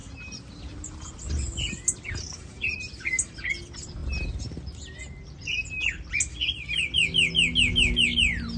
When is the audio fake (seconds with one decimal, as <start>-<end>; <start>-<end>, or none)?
none